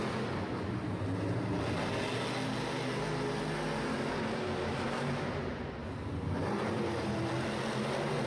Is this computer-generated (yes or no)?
no